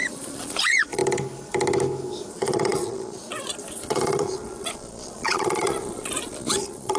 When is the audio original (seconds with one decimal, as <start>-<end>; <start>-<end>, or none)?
1.0-2.3